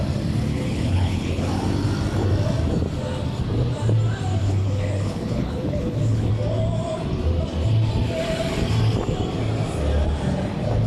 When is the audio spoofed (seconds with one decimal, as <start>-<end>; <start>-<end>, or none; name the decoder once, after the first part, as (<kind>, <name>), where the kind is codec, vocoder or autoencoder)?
0.5-1.5 (codec, HILCodec); 4.4-6.3